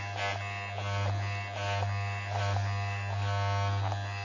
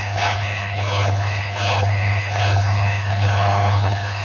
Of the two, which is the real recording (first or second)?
first